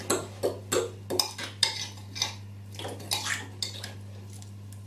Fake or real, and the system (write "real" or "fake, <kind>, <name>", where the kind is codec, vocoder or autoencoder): real